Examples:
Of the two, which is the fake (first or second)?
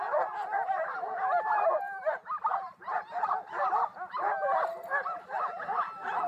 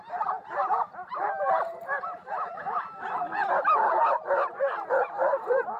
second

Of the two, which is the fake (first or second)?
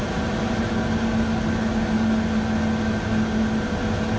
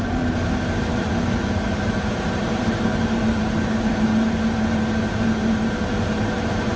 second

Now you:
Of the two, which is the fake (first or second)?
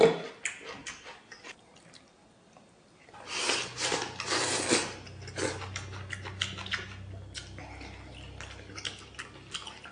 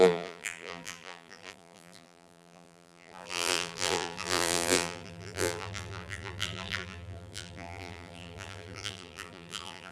second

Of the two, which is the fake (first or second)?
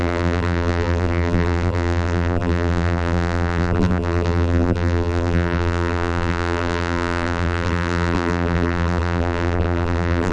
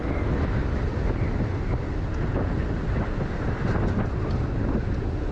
first